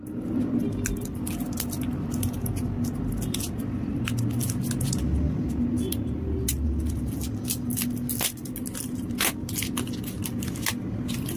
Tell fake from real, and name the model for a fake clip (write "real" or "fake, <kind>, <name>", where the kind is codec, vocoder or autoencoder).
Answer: real